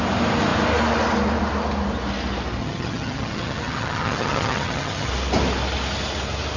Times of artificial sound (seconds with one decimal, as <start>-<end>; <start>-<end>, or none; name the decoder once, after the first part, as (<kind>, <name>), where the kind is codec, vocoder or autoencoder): 2.6-5.1 (vocoder, HiFi-GAN)